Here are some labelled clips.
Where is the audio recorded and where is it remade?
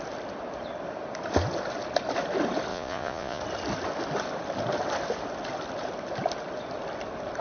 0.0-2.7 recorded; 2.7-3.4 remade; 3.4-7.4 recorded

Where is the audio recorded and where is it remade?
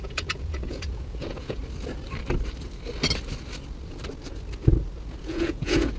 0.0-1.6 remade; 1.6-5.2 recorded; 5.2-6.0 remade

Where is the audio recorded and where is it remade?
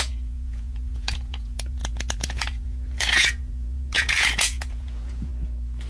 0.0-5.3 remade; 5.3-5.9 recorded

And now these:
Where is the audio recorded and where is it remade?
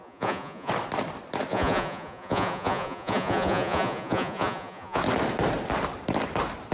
0.0-0.7 remade; 0.7-1.5 recorded; 1.5-5.0 remade; 5.0-6.7 recorded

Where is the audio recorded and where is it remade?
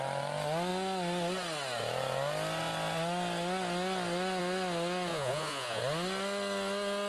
0.0-5.1 recorded; 5.1-5.8 remade; 5.8-7.1 recorded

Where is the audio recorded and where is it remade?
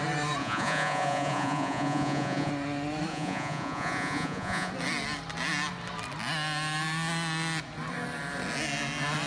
0.0-0.4 recorded; 0.4-2.5 remade; 2.5-3.1 recorded; 3.1-4.7 remade; 4.7-9.3 recorded